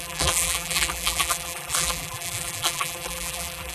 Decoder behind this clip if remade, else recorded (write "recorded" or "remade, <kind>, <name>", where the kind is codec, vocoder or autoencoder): remade, vocoder, BigVGAN v2